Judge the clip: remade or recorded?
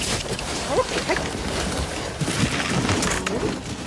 remade